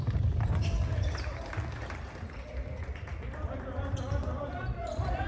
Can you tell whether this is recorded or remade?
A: remade